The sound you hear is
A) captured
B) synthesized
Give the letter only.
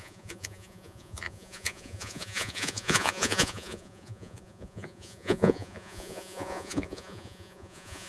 B